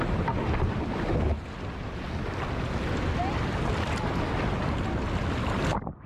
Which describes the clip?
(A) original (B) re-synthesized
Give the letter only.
A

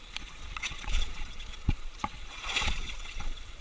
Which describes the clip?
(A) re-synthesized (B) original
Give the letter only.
A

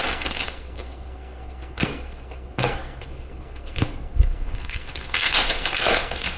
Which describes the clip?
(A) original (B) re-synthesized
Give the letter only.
B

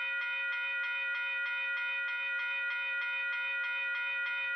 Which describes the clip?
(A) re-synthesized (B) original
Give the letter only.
B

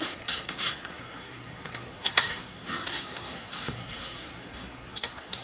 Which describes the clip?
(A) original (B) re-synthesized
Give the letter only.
B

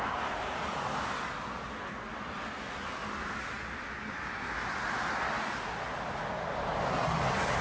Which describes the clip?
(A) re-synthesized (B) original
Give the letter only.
B